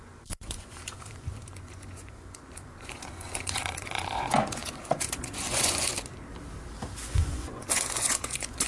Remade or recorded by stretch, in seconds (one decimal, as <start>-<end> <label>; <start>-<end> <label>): 0.0-5.9 remade; 5.9-7.1 recorded; 7.1-8.7 remade